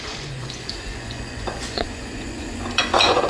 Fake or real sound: fake